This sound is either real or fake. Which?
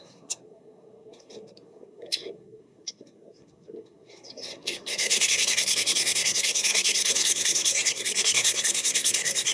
fake